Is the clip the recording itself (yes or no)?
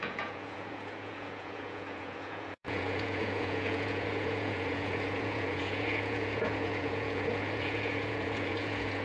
no